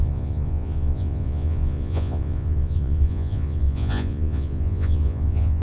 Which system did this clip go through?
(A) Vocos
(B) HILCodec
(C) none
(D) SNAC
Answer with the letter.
A